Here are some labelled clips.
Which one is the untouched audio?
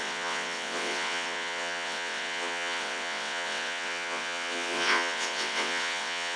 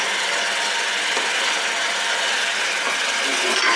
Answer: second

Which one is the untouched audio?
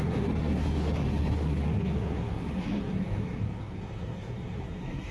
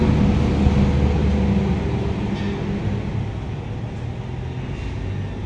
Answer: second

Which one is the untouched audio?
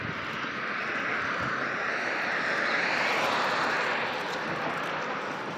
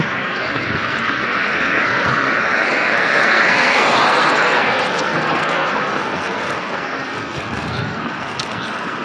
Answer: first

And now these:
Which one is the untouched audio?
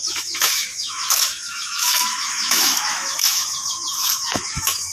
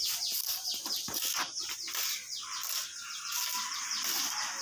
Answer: second